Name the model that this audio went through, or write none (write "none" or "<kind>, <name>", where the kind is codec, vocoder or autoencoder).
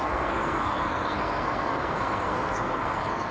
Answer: codec, SNAC